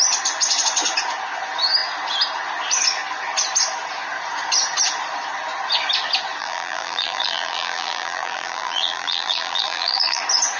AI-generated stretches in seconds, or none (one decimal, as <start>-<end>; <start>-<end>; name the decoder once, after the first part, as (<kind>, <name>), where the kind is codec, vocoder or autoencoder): 6.4-10.2 (vocoder, BigVGAN v2)

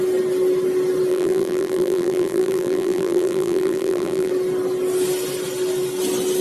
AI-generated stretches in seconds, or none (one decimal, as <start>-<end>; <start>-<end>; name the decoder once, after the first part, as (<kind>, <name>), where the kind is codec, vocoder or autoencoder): 1.1-4.3 (vocoder, BigVGAN v2)

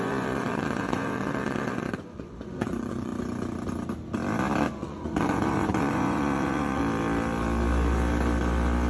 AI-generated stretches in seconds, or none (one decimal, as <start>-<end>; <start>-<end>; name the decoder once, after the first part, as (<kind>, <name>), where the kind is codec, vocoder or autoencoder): 0.0-3.1 (vocoder, Vocos); 4.6-6.8

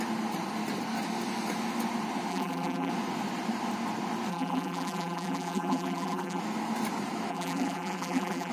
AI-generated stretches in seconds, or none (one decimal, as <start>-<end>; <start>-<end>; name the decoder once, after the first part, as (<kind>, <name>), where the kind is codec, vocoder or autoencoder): 2.3-2.9 (vocoder, BigVGAN v2); 4.3-6.4; 7.3-8.5

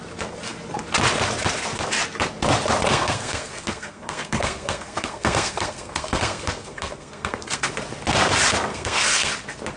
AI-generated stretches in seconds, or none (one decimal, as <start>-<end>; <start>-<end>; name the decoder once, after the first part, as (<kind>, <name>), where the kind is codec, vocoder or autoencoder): 2.9-7.7 (codec, SNAC); 8.7-9.3

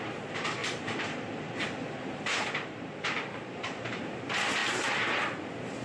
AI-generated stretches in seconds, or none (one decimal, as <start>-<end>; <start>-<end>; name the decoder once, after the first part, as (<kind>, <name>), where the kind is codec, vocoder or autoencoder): 0.6-4.1 (vocoder, BigVGAN v2)